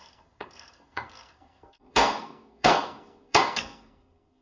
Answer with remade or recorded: remade